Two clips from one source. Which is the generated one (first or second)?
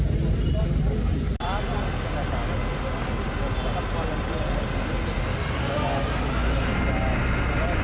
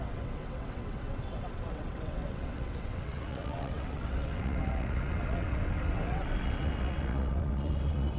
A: second